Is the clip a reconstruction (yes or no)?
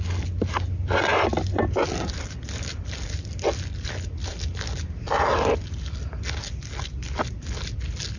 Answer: no